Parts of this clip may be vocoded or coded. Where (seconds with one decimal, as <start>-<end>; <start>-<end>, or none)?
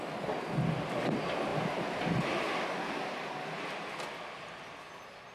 none